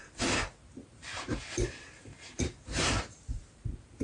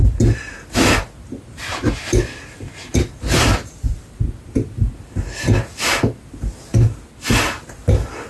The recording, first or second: second